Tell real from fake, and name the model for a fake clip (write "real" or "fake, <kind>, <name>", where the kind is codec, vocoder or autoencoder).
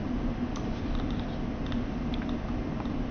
real